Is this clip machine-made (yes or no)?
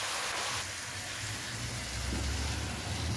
no